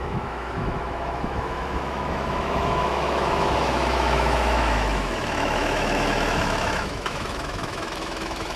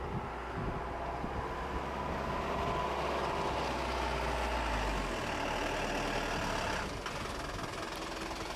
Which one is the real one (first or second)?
second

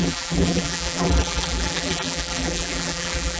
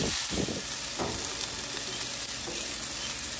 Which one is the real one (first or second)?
second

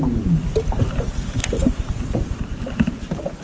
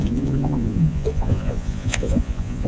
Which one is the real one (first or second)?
first